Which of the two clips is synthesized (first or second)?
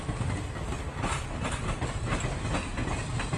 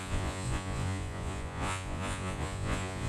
second